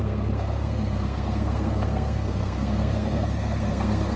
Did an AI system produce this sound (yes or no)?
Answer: yes